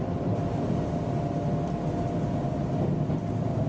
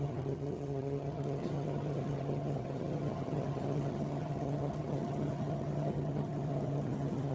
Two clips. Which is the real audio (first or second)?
first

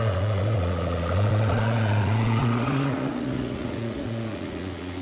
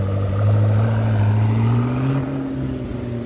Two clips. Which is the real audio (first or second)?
second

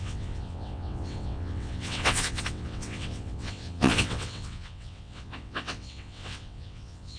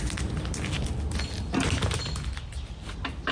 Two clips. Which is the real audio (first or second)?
second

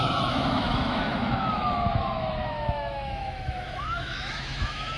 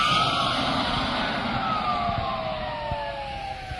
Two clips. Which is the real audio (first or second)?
second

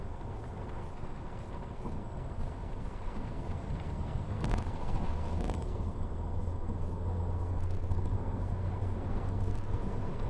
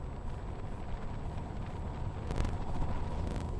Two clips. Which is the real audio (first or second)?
second